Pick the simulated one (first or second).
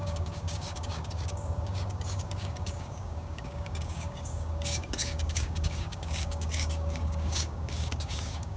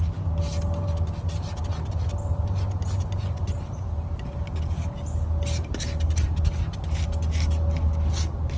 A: first